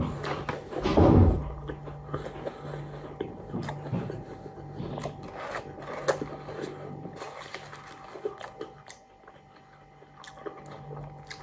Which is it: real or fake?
real